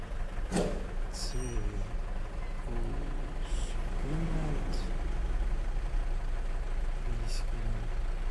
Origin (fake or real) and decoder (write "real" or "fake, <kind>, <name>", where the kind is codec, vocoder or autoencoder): real